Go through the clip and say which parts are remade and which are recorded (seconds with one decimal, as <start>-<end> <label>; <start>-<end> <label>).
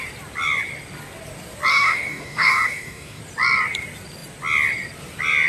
0.0-1.7 recorded; 1.7-3.2 remade; 3.2-5.5 recorded